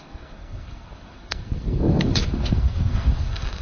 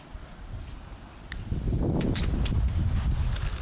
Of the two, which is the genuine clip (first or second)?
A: second